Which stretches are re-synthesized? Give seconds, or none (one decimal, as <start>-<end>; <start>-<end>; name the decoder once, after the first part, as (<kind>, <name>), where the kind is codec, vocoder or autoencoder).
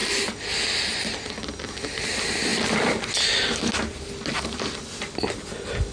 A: none